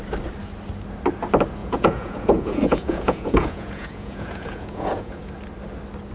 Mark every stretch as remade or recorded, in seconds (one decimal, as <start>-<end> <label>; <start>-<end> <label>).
0.0-1.6 recorded; 1.6-5.3 remade; 5.3-6.1 recorded